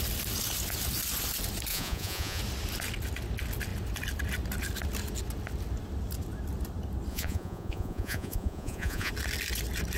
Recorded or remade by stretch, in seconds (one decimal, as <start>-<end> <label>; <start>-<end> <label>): 0.0-1.7 recorded; 1.7-2.4 remade; 2.4-7.1 recorded; 7.1-9.1 remade; 9.1-10.0 recorded

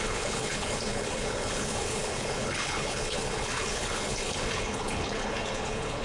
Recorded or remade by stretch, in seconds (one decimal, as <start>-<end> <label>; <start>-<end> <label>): 0.0-6.0 remade